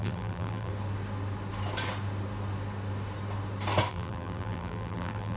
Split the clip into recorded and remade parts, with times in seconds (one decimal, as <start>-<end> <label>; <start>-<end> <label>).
0.0-0.7 remade; 0.7-3.9 recorded; 3.9-5.4 remade